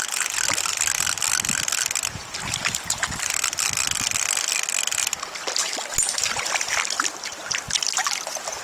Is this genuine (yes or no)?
yes